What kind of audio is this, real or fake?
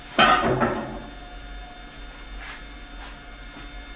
real